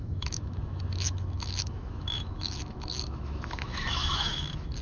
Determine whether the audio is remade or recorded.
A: remade